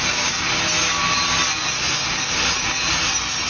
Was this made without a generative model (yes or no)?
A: yes